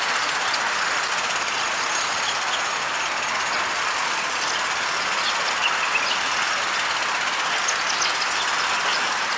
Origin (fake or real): real